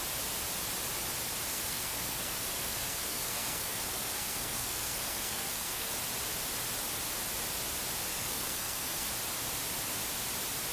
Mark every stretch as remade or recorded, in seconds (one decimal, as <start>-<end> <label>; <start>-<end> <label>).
0.0-1.5 recorded; 1.5-5.9 remade; 5.9-8.1 recorded; 8.1-9.1 remade; 9.1-10.7 recorded